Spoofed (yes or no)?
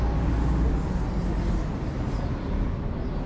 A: no